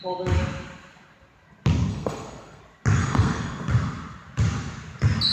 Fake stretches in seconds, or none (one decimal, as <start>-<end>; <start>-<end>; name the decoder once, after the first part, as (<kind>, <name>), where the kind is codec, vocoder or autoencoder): 1.9-2.6 (codec, SNAC); 3.0-3.6